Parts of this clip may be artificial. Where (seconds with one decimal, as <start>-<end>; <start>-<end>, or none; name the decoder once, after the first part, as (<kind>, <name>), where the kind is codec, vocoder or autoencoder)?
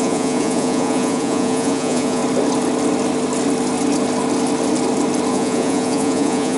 0.0-2.2 (vocoder, Vocos); 5.3-6.6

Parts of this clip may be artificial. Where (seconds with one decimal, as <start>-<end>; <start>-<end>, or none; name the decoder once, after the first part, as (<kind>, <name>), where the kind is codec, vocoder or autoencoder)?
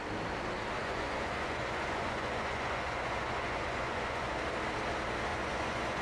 0.8-4.4 (vocoder, Vocos); 5.3-6.0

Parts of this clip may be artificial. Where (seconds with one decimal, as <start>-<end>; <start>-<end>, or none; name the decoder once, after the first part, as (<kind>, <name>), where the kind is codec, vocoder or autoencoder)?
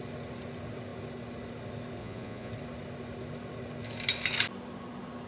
2.0-2.5 (vocoder, Vocos)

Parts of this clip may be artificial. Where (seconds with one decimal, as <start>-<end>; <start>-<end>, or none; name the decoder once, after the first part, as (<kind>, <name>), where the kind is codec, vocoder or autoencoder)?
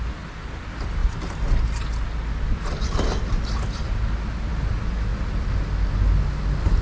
none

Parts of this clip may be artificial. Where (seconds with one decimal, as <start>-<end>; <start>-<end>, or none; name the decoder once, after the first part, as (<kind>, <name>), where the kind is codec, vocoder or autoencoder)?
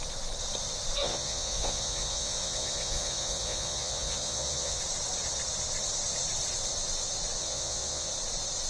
1.0-4.8 (vocoder, Vocos); 7.4-8.1